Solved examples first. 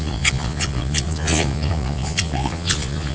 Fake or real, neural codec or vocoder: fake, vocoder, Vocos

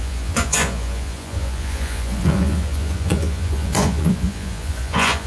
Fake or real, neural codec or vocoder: fake, vocoder, Vocos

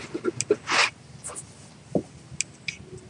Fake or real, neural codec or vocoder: real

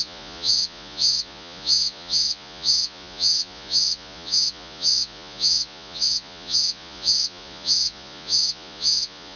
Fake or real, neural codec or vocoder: fake, vocoder, Vocos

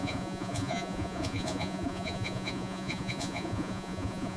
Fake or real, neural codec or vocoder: fake, vocoder, Vocos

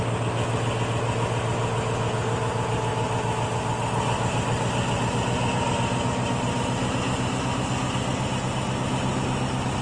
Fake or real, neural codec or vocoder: real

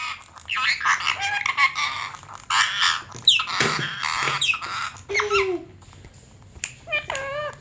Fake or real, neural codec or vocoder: real